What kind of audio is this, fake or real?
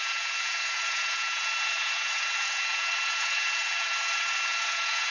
fake